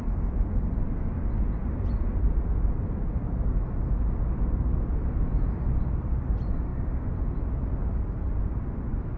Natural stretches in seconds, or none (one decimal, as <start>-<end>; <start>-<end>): 0.0-9.2